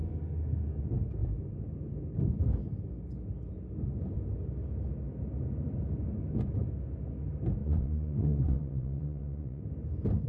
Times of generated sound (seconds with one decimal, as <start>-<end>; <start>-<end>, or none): 7.6-9.6